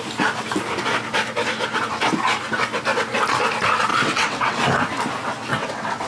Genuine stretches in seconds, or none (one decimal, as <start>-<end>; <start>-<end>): 0.0-3.9; 4.6-5.5